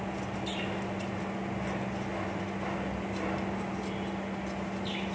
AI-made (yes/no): no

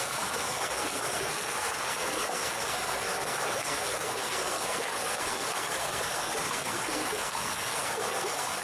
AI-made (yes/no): yes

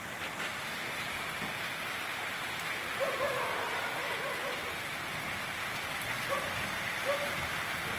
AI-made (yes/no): yes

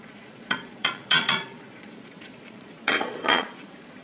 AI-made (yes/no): yes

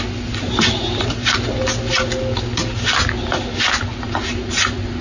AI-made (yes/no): no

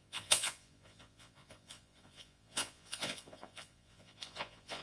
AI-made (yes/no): yes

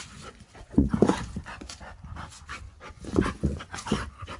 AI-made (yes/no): yes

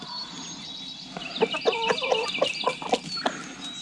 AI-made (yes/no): no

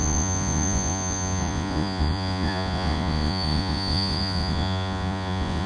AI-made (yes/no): yes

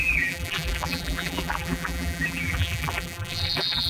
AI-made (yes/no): yes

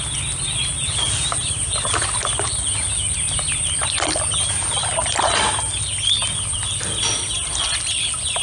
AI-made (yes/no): no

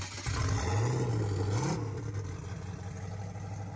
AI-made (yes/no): no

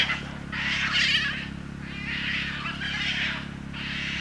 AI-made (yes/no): no